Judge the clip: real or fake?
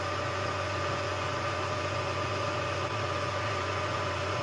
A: fake